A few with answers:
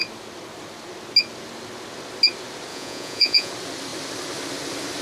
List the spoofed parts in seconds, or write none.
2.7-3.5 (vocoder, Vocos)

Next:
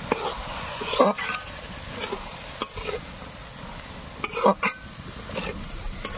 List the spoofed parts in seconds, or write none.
0.5-1.0 (vocoder, Vocos)

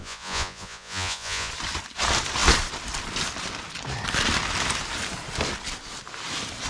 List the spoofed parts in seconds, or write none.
0.0-1.5 (vocoder, Vocos)